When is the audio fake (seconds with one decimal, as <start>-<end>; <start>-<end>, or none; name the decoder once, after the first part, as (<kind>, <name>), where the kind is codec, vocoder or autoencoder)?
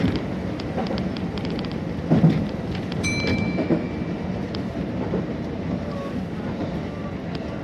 3.3-3.9 (autoencoder, DAC-VAE)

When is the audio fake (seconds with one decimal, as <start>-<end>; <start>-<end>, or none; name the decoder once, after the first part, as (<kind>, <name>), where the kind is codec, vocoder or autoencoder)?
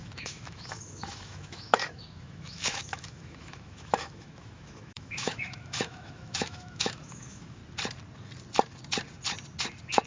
0.0-7.6 (autoencoder, DAC-VAE)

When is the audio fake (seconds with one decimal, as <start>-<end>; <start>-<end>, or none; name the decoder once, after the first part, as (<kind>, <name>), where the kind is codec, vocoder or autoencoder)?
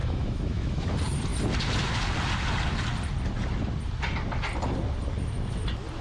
0.0-0.9 (autoencoder, DAC-VAE)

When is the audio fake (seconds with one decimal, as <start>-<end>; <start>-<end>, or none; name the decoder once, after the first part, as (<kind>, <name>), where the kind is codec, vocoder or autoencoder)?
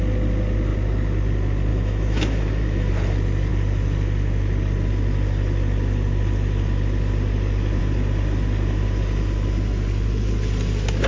1.7-2.9 (autoencoder, DAC-VAE)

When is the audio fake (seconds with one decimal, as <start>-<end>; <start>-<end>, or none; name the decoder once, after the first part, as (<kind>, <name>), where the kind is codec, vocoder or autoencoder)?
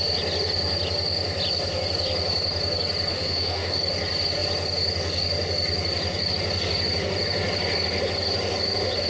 3.1-3.8 (autoencoder, DAC-VAE)